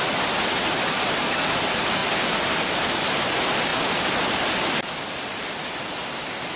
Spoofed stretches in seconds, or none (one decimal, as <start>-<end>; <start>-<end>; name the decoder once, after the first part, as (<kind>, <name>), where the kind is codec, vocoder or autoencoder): none

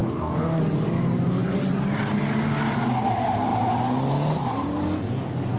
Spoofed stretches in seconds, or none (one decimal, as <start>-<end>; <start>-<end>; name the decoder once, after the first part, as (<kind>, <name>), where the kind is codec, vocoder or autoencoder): 0.0-0.6 (codec, DAC)

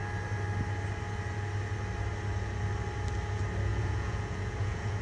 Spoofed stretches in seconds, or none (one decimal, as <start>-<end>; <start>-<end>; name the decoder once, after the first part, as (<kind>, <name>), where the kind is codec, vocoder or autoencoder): 3.7-5.0 (vocoder, Vocos)

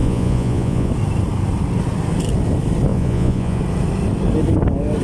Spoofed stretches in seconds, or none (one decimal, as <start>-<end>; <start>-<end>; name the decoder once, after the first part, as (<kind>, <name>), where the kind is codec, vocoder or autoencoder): 0.0-0.9 (vocoder, Vocos); 2.9-3.6

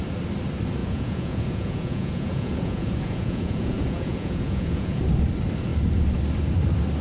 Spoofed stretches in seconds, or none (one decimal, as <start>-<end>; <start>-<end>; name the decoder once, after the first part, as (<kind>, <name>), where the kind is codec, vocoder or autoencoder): 0.8-5.0 (vocoder, Vocos)